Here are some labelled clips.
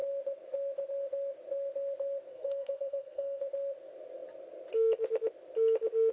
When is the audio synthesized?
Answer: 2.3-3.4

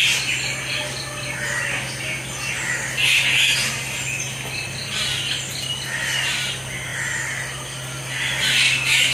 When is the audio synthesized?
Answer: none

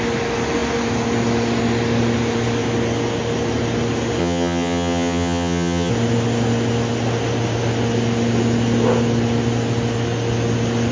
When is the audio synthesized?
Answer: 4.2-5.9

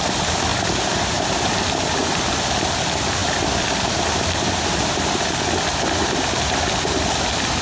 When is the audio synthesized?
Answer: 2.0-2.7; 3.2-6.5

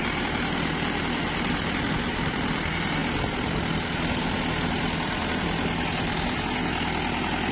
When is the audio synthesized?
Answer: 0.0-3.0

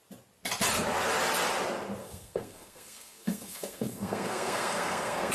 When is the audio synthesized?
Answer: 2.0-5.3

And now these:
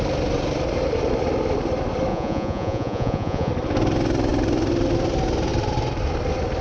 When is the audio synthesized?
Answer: 2.1-3.5

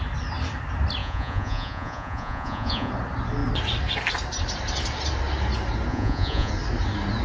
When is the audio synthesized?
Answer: 1.0-2.9; 5.9-6.5